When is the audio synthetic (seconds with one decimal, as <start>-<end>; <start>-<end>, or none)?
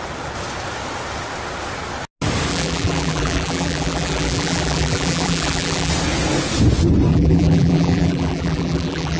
2.5-5.9; 7.1-9.2